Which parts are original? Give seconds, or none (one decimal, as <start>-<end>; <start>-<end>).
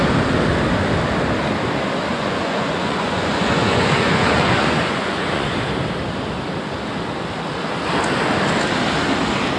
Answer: 0.0-2.1; 5.5-9.6